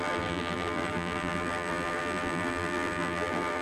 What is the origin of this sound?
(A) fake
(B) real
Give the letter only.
A